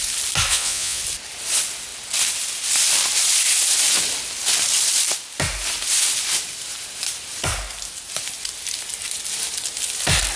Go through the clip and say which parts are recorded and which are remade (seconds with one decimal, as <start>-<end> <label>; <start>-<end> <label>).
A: 0.0-0.5 recorded; 0.5-1.0 remade; 1.0-10.4 recorded